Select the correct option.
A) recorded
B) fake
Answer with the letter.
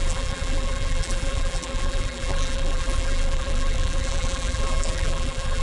B